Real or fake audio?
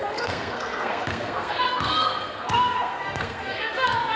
fake